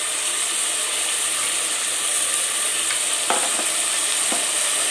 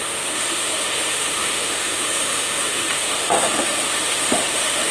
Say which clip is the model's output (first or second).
second